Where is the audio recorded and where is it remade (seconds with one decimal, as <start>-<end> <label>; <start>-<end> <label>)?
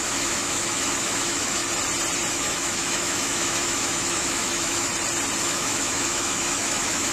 0.0-1.6 remade; 1.6-2.3 recorded; 2.3-4.9 remade; 4.9-5.4 recorded; 5.4-7.1 remade